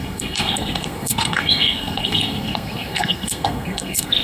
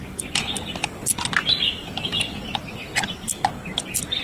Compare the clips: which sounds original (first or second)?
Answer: second